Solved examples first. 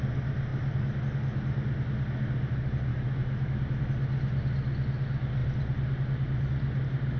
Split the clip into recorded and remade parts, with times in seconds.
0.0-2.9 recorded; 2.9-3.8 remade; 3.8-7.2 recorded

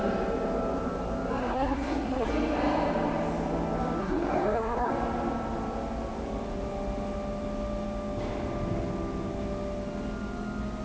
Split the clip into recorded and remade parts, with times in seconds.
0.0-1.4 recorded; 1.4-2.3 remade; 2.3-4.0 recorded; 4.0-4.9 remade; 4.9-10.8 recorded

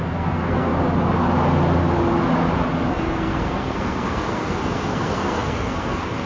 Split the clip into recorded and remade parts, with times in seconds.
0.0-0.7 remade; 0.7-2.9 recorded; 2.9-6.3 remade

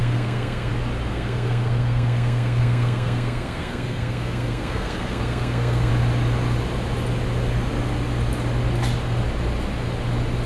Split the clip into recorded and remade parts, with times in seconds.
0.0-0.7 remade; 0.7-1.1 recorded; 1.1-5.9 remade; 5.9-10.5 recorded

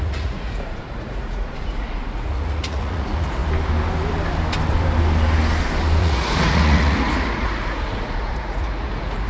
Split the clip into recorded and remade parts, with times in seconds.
0.0-3.4 remade; 3.4-6.0 recorded; 6.0-9.3 remade